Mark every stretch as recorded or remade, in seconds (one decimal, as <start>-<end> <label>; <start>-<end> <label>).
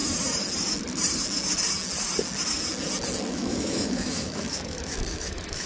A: 0.0-3.3 recorded; 3.3-5.7 remade